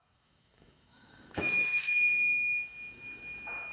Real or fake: fake